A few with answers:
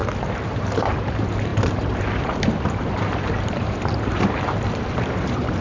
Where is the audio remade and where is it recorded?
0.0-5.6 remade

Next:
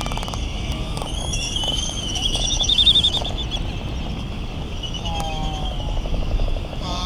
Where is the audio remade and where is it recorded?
0.0-3.4 remade; 3.4-4.1 recorded; 4.1-7.1 remade

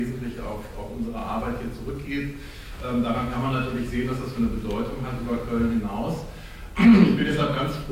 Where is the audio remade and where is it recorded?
0.0-2.4 recorded; 2.4-4.4 remade; 4.4-6.9 recorded; 6.9-7.9 remade